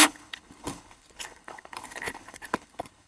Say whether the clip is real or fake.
fake